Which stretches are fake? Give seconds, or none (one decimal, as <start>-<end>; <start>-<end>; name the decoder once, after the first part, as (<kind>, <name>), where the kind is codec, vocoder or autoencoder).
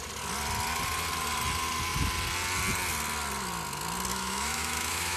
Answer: 4.1-5.2 (autoencoder, DAC-VAE)